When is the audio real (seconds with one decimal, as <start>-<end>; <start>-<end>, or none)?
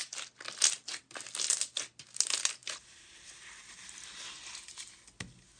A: 0.0-5.6